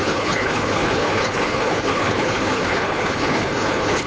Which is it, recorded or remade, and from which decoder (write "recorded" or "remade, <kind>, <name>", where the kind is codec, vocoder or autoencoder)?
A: remade, codec, HILCodec